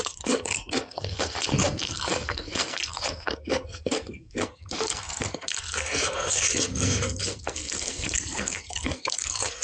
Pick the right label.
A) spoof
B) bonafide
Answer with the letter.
A